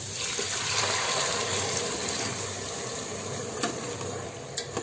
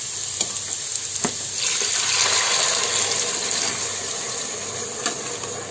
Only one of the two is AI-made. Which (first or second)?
first